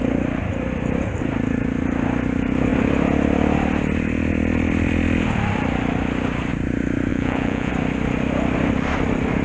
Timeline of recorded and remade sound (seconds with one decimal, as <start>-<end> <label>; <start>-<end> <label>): 0.0-7.1 recorded; 7.1-7.7 remade; 7.7-9.4 recorded